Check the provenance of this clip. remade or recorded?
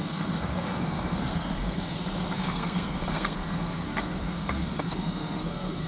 remade